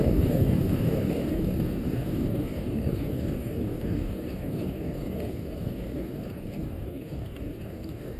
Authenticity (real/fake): fake